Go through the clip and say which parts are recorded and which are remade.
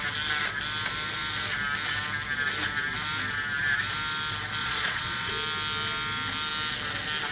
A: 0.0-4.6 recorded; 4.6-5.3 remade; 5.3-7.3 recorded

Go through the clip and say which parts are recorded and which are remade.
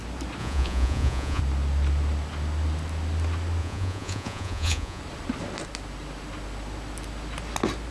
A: 0.0-0.4 recorded; 0.4-1.4 remade; 1.4-3.6 recorded; 3.6-5.0 remade; 5.0-7.9 recorded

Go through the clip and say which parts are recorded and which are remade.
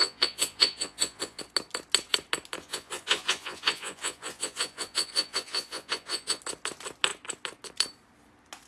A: 0.0-1.4 remade; 1.4-2.6 recorded; 2.6-6.4 remade; 6.4-8.7 recorded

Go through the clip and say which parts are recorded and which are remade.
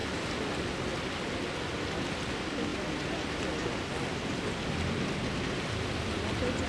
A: 0.0-6.7 recorded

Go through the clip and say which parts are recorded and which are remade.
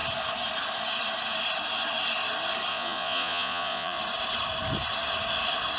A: 0.0-2.7 recorded; 2.7-4.0 remade; 4.0-5.8 recorded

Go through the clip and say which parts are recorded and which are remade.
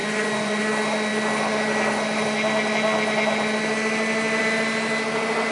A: 0.0-0.6 remade; 0.6-5.5 recorded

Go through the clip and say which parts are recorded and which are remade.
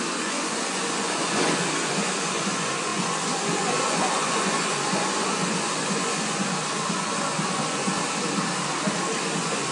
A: 0.0-7.9 remade; 7.9-9.2 recorded; 9.2-9.7 remade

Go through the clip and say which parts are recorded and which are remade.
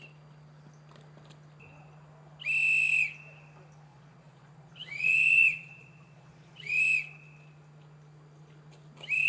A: 0.0-3.9 recorded; 3.9-6.7 remade; 6.7-9.3 recorded